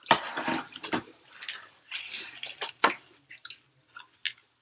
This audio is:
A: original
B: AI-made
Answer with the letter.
A